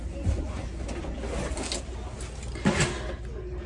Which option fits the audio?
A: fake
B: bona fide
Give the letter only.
B